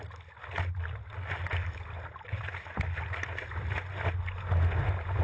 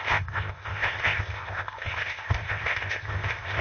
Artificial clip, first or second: second